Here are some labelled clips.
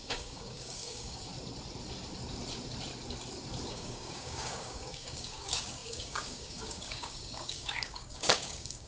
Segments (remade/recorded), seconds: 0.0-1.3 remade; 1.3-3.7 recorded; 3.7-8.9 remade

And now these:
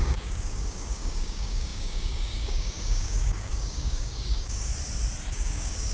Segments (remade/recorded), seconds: 0.0-4.7 remade; 4.7-5.3 recorded; 5.3-5.9 remade

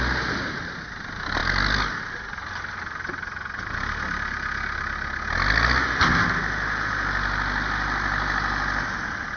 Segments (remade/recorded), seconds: 0.0-9.4 recorded

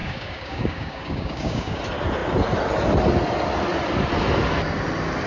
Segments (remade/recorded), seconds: 0.0-1.8 remade; 1.8-5.3 recorded

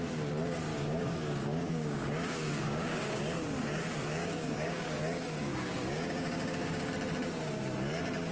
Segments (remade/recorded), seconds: 0.0-0.7 recorded; 0.7-3.2 remade; 3.2-4.2 recorded; 4.2-6.9 remade; 6.9-8.3 recorded

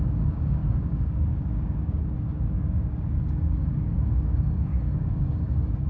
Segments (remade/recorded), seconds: 0.0-5.9 remade

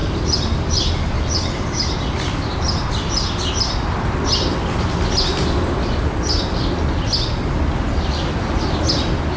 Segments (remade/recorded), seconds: 0.0-9.4 recorded